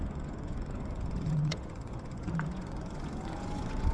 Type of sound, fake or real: fake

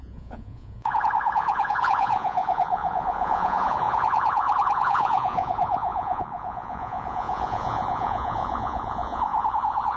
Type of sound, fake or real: fake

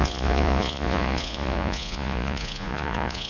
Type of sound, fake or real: fake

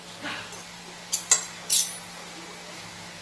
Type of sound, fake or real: real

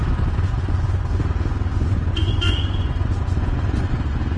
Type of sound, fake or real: fake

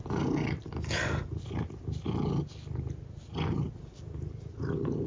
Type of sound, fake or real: real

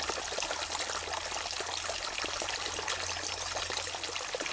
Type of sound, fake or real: real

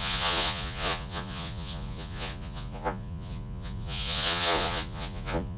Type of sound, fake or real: fake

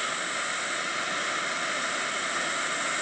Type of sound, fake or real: real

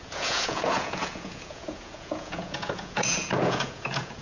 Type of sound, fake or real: fake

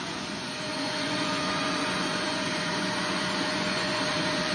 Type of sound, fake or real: fake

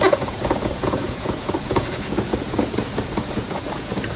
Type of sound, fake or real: fake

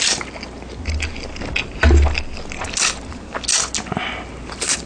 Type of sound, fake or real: real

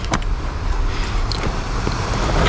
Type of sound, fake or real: real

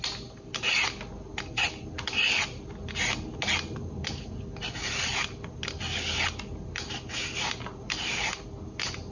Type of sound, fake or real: real